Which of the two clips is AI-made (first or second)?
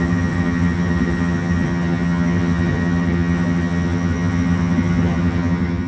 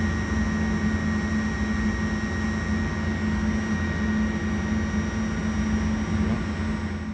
first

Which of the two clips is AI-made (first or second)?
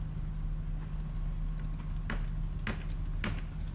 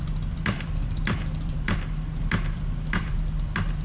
second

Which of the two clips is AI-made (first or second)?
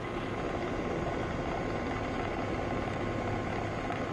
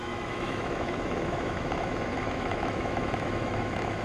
second